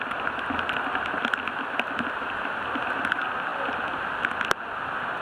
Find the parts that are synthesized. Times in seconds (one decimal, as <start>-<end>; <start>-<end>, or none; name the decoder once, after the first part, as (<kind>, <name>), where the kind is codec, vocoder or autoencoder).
none